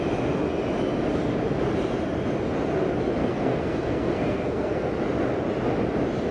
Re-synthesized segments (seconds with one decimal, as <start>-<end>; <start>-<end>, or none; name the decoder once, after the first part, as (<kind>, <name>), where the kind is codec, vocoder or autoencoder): 3.2-4.9 (codec, SNAC)